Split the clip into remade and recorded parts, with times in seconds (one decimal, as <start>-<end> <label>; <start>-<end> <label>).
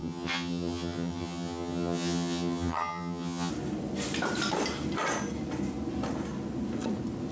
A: 0.0-3.5 remade; 3.5-7.3 recorded